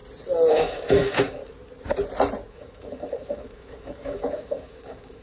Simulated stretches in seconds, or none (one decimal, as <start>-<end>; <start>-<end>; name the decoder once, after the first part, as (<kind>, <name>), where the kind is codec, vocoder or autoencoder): 0.5-1.4 (autoencoder, DAC-VAE); 2.5-5.2